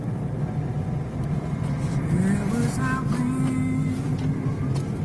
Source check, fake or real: real